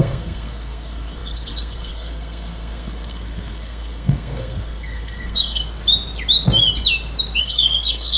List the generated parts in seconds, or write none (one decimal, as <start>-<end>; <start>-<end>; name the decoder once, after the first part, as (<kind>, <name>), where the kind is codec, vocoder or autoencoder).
0.0-5.6 (codec, SNAC); 7.4-8.2